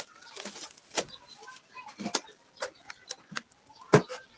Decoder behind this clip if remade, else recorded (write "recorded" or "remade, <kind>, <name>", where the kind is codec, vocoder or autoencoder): recorded